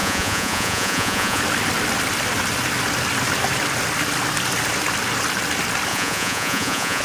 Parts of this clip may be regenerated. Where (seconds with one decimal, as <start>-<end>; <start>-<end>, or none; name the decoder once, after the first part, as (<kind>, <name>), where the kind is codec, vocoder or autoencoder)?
0.0-1.4 (vocoder, Vocos); 5.9-7.0